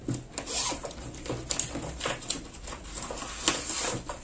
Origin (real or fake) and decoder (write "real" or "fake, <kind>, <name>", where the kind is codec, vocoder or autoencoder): real